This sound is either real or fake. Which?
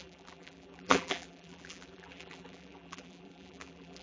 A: fake